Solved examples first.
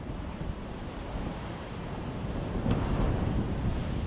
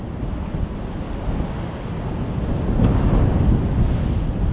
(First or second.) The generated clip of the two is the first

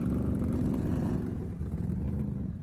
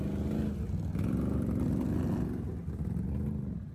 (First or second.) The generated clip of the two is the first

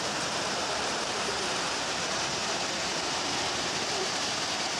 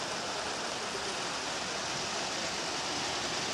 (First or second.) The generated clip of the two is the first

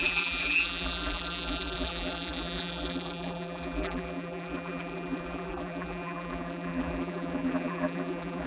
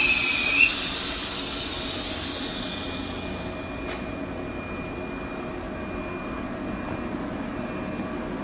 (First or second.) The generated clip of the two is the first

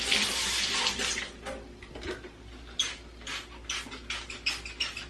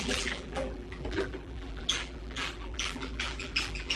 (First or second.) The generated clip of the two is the second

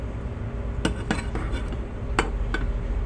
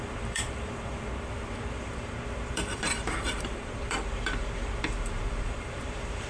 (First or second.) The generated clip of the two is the second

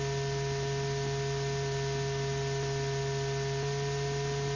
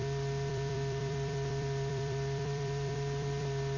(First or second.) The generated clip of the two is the second